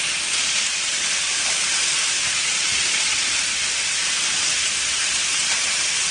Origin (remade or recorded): remade